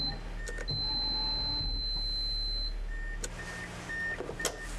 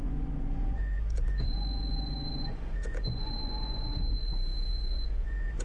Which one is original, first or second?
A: first